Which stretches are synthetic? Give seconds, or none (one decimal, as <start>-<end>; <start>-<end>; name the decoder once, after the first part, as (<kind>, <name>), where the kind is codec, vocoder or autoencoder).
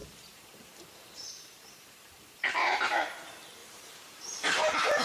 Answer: 0.0-3.0 (vocoder, BigVGAN v2); 3.6-5.0